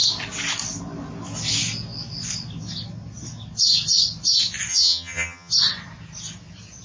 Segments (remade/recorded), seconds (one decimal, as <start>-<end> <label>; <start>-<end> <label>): 0.0-4.7 recorded; 4.7-5.5 remade; 5.5-6.8 recorded